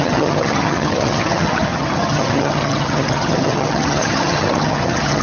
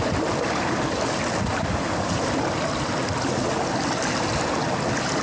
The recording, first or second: second